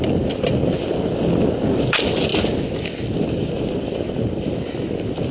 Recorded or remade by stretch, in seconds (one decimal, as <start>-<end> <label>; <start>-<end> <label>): 0.0-5.3 recorded

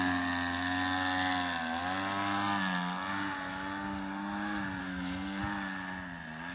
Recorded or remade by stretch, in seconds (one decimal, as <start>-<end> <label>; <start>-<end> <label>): 0.0-4.8 recorded; 4.8-5.4 remade; 5.4-6.5 recorded

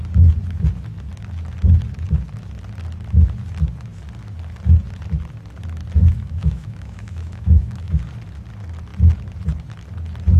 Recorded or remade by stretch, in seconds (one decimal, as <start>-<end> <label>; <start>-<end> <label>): 0.0-6.0 recorded; 6.0-7.9 remade; 7.9-10.4 recorded

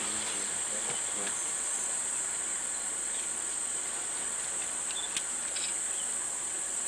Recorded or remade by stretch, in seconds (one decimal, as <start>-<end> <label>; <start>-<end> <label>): 0.0-6.9 recorded

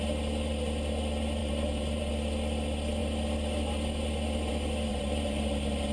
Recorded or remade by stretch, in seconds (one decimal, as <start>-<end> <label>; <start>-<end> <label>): 0.0-1.4 recorded; 1.4-2.1 remade; 2.1-4.9 recorded; 4.9-5.9 remade

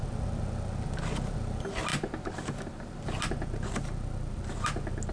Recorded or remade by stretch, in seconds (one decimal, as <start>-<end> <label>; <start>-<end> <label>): 0.0-1.9 recorded; 1.9-3.2 remade; 3.2-5.1 recorded